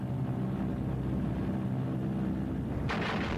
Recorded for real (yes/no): yes